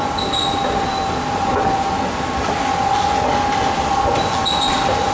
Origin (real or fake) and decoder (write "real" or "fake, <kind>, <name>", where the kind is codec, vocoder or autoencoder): real